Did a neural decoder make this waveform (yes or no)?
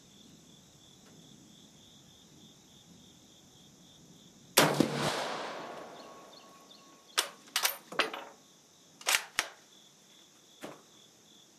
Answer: no